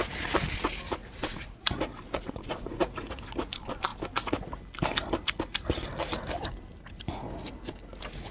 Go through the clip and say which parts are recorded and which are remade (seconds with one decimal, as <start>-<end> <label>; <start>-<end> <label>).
0.0-1.0 recorded; 1.0-3.5 remade; 3.5-8.3 recorded